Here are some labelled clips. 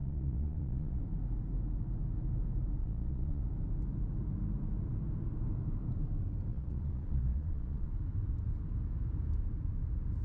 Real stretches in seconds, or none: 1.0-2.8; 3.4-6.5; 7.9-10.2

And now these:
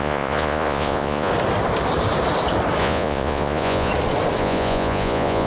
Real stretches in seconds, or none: 1.3-2.8; 3.9-4.4